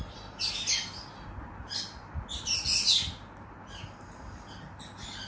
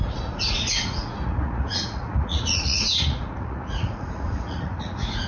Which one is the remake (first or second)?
second